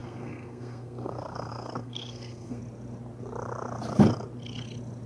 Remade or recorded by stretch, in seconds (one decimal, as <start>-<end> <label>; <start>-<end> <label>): 0.0-2.6 remade; 2.6-5.1 recorded